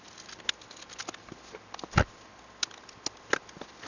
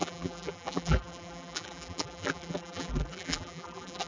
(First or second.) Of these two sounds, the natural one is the first